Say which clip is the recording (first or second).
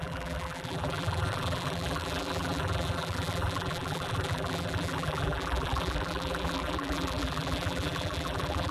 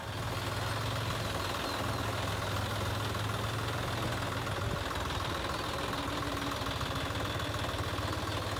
second